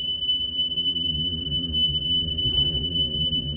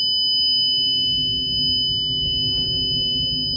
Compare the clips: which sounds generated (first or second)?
first